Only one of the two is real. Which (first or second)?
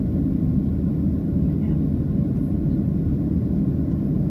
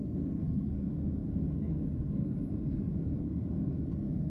first